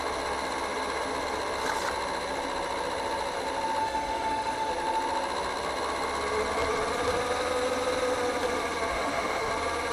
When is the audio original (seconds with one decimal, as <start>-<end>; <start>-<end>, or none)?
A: 0.0-3.8; 4.7-8.9; 9.5-9.9